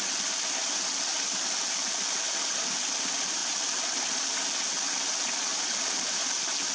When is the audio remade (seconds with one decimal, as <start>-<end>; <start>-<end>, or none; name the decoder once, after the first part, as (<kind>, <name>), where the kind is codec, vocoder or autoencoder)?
none